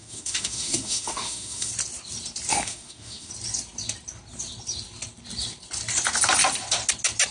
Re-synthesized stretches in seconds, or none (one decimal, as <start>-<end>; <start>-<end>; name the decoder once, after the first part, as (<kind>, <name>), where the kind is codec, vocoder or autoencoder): 0.0-1.7 (autoencoder, DAC-VAE); 2.5-3.3